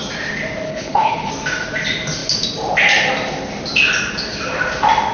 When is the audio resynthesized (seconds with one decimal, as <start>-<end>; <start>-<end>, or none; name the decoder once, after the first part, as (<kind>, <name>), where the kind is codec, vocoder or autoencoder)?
0.7-1.3 (codec, HILCodec)